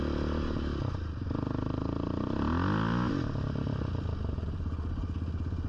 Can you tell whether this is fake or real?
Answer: real